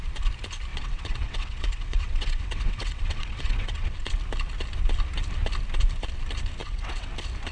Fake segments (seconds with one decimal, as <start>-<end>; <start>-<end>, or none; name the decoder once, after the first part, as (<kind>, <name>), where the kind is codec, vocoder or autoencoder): 0.7-4.1 (vocoder, WaveNeXt); 6.6-7.1

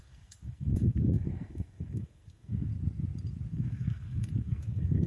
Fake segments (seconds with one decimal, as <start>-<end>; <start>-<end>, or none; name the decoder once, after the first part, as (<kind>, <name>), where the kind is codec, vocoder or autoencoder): 0.0-2.7 (codec, SNAC); 3.5-5.1

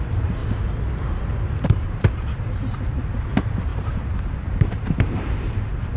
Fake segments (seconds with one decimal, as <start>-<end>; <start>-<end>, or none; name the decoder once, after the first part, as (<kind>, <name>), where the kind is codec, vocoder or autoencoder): 0.0-0.4 (vocoder, BigVGAN v2); 1.5-6.0

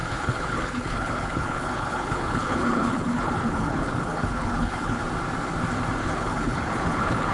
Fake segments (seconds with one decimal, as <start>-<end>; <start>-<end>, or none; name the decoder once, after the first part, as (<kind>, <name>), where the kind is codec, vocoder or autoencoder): 0.0-5.0 (codec, HILCodec); 6.0-7.3

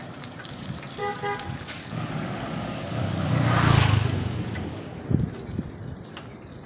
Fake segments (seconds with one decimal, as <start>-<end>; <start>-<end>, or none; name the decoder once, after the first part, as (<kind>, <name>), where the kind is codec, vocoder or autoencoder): 1.0-5.0 (codec, DAC)

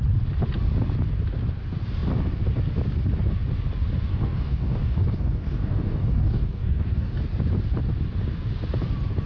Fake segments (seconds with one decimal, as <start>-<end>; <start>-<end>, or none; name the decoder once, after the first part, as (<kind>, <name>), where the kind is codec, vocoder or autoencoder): 4.1-7.2 (codec, DAC)

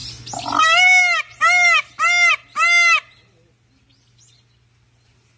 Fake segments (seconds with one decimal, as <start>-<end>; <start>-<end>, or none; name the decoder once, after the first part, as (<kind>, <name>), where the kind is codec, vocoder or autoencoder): none

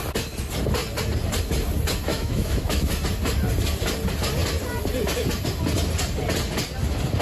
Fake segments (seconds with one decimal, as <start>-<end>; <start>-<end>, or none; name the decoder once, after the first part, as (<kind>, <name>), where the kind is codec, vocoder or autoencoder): 2.1-2.9 (autoencoder, DAC-VAE)